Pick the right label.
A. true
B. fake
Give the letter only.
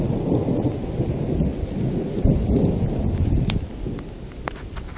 A